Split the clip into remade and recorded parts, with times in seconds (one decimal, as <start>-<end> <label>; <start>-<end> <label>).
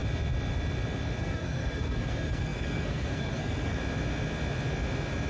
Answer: 0.0-1.2 recorded; 1.2-3.8 remade; 3.8-5.3 recorded